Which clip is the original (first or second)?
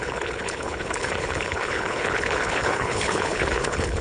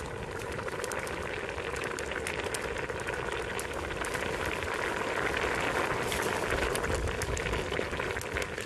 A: second